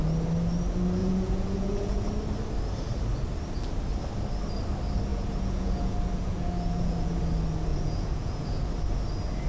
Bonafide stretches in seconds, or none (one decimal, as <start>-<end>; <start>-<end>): 0.0-1.0; 2.1-5.1; 7.2-7.7; 8.6-9.5